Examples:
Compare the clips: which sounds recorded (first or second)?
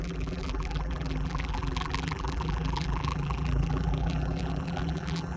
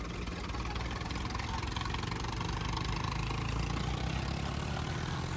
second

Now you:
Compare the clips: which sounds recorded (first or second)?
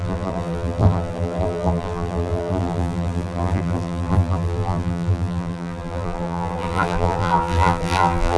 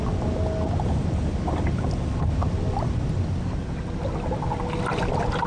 second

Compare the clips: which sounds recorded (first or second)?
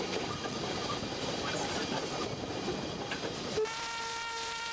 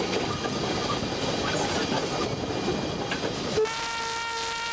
second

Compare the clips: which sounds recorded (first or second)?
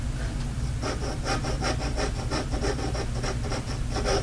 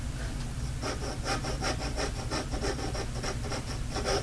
first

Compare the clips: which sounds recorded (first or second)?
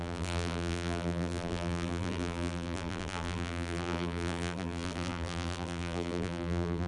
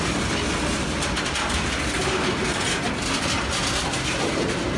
second